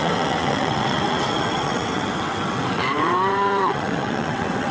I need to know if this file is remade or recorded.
remade